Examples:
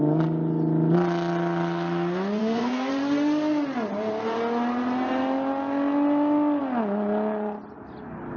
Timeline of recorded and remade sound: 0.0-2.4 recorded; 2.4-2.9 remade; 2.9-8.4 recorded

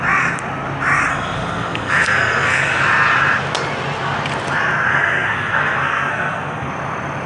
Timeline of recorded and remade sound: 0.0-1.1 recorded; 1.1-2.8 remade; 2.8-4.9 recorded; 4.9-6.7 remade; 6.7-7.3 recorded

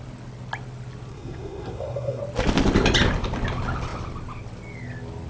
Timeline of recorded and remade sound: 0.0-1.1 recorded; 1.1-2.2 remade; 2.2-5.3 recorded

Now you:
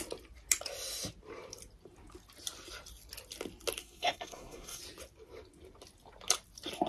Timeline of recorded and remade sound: 0.0-3.8 recorded; 3.8-4.8 remade; 4.8-6.9 recorded

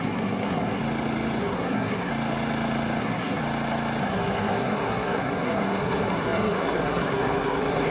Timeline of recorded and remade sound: 0.0-0.8 remade; 0.8-1.4 recorded; 1.4-2.1 remade; 2.1-3.0 recorded; 3.0-3.4 remade; 3.4-4.0 recorded; 4.0-7.9 remade

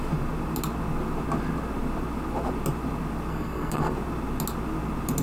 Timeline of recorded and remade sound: 0.0-3.3 recorded; 3.3-3.9 remade; 3.9-5.2 recorded

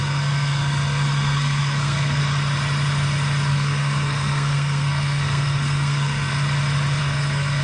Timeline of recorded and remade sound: 0.0-2.2 remade; 2.2-3.5 recorded; 3.5-6.3 remade; 6.3-7.0 recorded; 7.0-7.6 remade